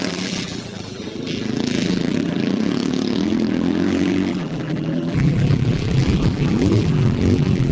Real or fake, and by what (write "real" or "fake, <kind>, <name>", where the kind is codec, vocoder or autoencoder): fake, vocoder, BigVGAN v2